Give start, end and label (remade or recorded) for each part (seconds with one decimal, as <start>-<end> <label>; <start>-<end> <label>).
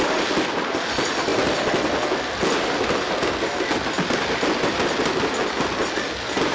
0.0-6.5 recorded